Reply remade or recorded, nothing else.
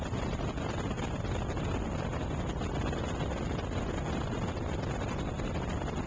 recorded